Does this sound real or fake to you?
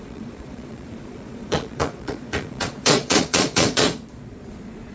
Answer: fake